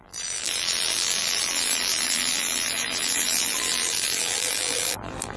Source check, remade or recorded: remade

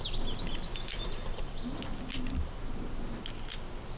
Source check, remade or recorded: recorded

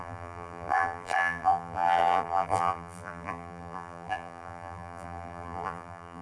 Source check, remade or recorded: remade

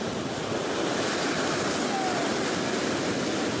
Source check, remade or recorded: recorded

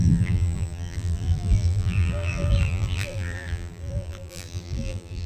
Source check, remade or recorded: remade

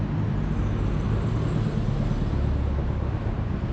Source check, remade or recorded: recorded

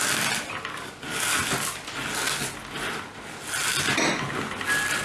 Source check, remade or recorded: recorded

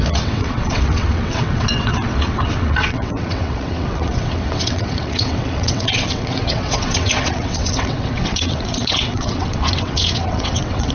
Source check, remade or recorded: remade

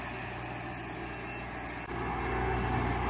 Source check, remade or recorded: recorded